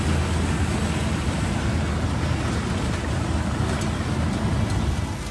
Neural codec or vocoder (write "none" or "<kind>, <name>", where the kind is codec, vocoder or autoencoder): none